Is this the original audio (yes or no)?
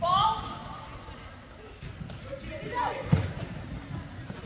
yes